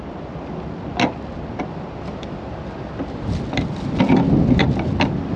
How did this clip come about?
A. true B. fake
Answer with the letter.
A